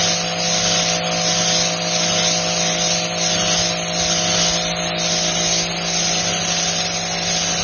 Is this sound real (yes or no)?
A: yes